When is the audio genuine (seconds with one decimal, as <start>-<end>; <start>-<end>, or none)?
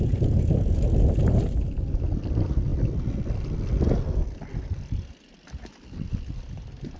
0.0-7.0